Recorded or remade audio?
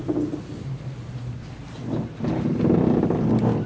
recorded